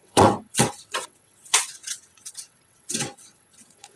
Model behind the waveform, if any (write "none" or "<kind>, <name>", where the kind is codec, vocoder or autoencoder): vocoder, WaveNeXt